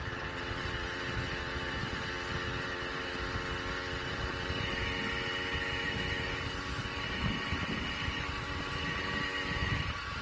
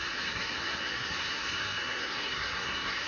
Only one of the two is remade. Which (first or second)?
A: second